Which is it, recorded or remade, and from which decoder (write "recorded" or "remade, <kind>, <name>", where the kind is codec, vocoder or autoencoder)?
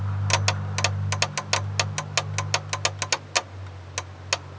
recorded